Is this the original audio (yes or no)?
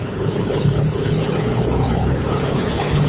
no